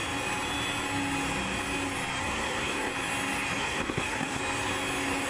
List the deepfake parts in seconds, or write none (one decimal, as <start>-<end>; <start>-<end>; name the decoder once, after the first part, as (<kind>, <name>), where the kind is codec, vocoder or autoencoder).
2.2-2.9 (codec, SNAC); 3.6-4.4